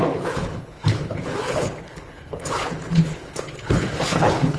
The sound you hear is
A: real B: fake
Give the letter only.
B